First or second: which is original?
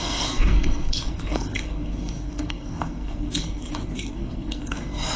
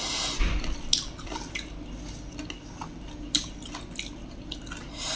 second